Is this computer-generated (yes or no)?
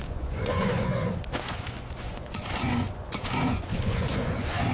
yes